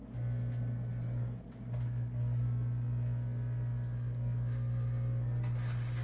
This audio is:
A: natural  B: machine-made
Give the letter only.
A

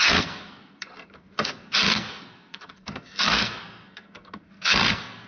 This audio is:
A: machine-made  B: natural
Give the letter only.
A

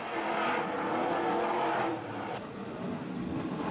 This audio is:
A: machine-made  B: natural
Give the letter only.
B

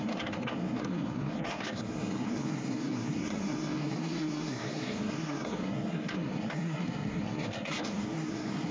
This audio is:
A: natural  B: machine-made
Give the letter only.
B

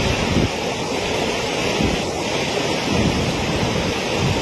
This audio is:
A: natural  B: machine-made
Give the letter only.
A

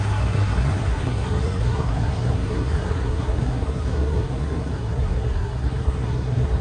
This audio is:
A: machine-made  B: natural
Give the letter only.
A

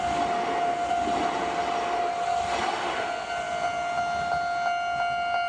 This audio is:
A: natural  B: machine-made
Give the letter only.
A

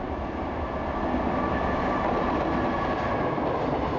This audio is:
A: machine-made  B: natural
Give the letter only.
B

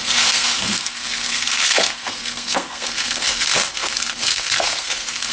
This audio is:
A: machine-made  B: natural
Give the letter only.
A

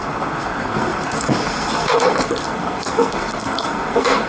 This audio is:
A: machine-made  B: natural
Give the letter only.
A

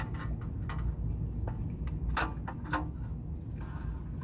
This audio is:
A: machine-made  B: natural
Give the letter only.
B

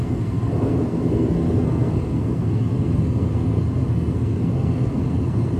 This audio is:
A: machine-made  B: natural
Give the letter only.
A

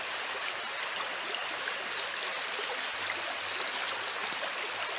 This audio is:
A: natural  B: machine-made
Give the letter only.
A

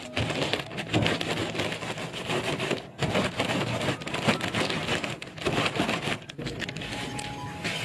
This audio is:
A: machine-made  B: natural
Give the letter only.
B